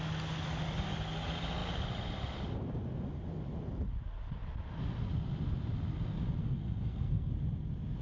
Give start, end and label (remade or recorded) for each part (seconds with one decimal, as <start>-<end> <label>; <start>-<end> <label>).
0.0-6.4 recorded; 6.4-7.3 remade; 7.3-8.0 recorded